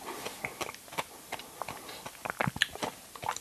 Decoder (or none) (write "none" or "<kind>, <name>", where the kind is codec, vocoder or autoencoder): none